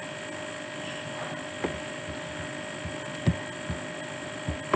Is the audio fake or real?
real